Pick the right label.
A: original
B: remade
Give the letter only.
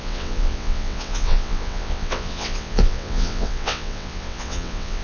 B